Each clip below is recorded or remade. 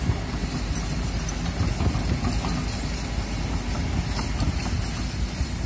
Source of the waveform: recorded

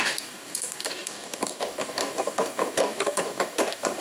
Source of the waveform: remade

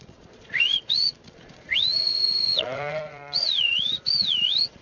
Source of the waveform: remade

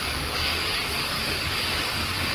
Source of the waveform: remade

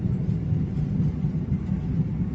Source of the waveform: recorded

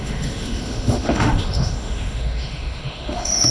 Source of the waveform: remade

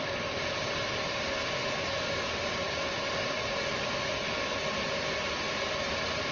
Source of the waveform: recorded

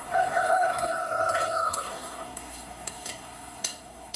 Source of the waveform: remade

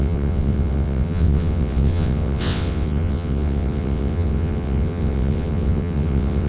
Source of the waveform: remade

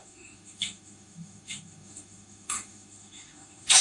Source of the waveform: remade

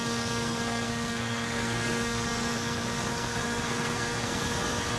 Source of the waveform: remade